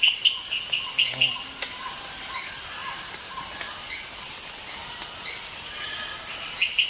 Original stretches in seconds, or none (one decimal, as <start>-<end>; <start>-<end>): 0.0-6.9